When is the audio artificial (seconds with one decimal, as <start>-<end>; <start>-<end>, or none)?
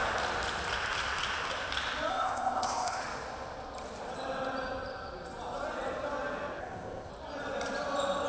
2.1-3.0; 6.6-7.1